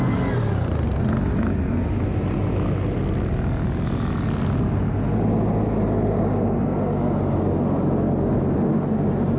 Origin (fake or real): real